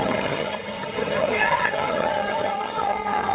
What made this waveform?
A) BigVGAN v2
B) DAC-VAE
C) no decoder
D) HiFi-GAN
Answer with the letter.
D